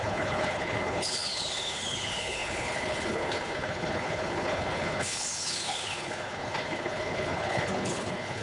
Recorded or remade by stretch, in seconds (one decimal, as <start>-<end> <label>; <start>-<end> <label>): 0.0-8.4 remade